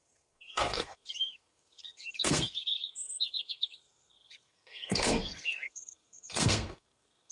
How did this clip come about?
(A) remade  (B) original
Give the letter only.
A